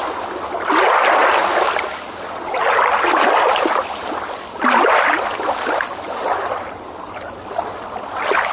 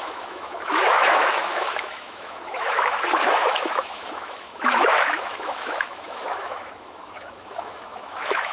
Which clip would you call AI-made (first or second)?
second